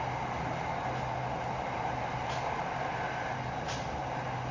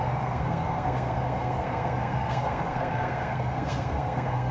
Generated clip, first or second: second